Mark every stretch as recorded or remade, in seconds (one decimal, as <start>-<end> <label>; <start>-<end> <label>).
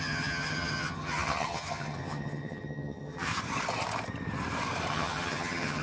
0.0-3.3 remade; 3.3-4.9 recorded; 4.9-5.8 remade